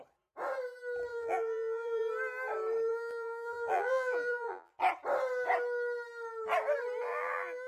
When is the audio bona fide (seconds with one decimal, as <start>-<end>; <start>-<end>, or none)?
0.0-1.1; 2.0-2.9; 4.7-7.1